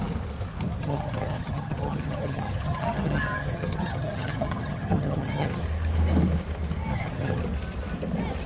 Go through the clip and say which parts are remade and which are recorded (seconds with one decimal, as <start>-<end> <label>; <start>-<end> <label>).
0.0-0.8 recorded; 0.8-5.6 remade; 5.6-6.9 recorded; 6.9-7.4 remade; 7.4-8.5 recorded